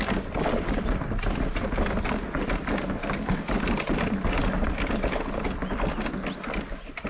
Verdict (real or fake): real